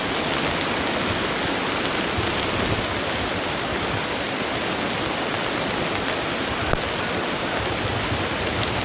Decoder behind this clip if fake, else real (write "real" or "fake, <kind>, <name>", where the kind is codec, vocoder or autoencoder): real